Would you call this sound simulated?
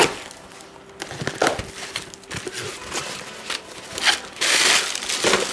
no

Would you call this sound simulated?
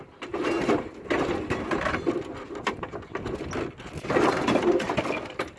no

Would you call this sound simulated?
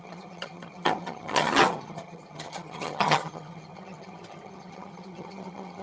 yes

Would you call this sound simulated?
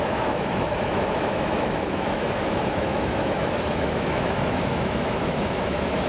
yes